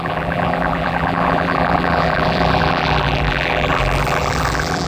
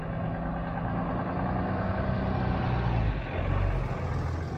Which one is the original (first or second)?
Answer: second